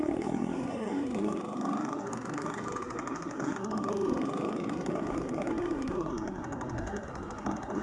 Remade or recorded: remade